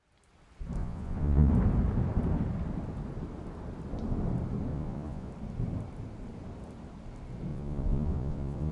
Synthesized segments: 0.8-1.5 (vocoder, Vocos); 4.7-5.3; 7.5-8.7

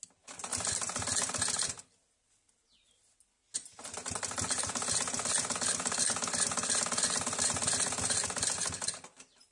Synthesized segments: none